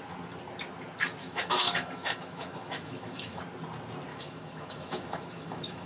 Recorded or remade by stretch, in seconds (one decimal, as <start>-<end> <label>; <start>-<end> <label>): 0.0-1.2 recorded; 1.2-3.4 remade; 3.4-4.1 recorded; 4.1-5.9 remade